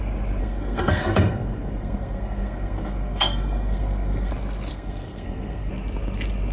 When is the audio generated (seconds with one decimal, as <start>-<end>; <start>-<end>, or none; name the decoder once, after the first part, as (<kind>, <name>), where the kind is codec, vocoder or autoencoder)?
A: 0.4-4.3 (codec, SNAC); 4.7-5.7